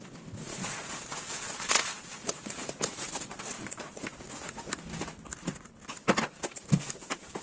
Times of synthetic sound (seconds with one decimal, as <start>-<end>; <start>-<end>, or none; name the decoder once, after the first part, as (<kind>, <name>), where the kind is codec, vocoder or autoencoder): 0.5-2.7 (vocoder, Vocos); 3.3-4.0